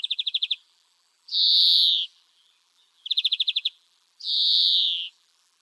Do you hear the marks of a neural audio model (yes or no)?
yes